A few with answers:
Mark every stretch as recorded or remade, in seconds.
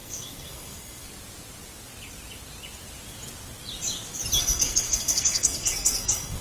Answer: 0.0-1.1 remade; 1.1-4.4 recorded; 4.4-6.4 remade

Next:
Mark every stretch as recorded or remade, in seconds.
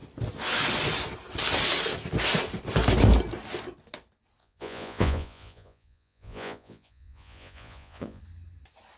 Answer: 0.0-4.4 recorded; 4.4-8.2 remade; 8.2-9.0 recorded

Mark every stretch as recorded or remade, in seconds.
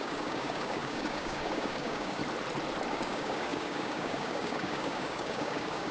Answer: 0.0-2.2 remade; 2.2-2.9 recorded; 2.9-5.9 remade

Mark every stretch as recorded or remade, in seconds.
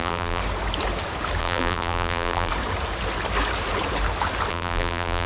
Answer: 0.0-0.4 remade; 0.4-1.4 recorded; 1.4-2.5 remade; 2.5-4.5 recorded; 4.5-5.3 remade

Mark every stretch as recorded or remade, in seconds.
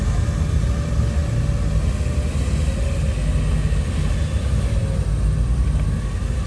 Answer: 0.0-6.5 recorded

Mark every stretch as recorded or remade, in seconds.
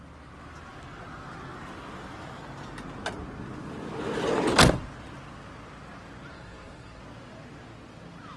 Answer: 0.0-6.3 recorded; 6.3-7.0 remade; 7.0-8.4 recorded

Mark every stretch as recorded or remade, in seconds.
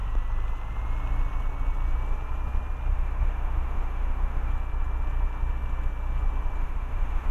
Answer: 0.0-2.9 recorded; 2.9-4.5 remade; 4.5-6.6 recorded; 6.6-7.3 remade